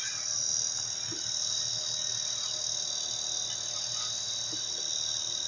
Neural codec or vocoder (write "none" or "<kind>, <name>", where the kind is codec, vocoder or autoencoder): none